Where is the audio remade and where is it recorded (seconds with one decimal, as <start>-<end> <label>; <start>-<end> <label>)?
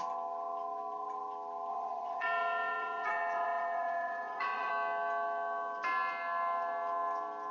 0.0-1.7 recorded; 1.7-4.7 remade; 4.7-7.5 recorded